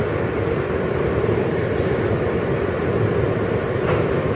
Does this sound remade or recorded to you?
recorded